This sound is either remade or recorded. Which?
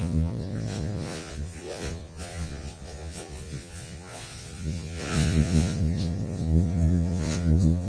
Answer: remade